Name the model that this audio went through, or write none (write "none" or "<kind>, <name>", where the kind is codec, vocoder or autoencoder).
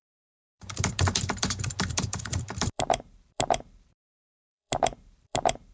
vocoder, BigVGAN v2